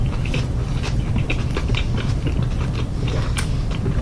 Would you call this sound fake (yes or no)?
yes